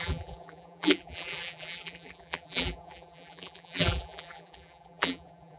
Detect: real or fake fake